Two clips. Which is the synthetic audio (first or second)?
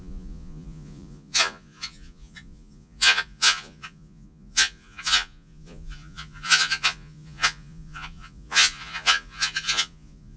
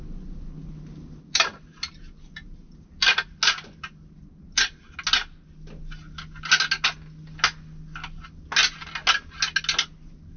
first